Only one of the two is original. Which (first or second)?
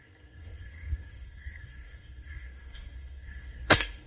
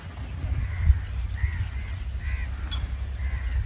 second